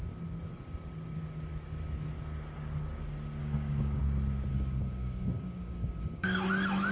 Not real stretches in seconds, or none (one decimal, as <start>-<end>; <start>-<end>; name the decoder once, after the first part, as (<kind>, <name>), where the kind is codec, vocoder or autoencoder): 3.4-4.0 (codec, DAC); 4.5-6.5